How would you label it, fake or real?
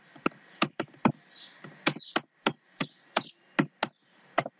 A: real